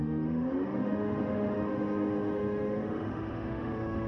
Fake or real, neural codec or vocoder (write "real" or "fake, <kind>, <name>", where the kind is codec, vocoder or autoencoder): fake, autoencoder, DAC-VAE